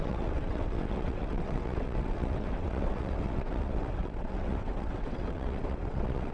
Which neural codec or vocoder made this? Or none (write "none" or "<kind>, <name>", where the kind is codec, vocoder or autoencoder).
vocoder, WaveNeXt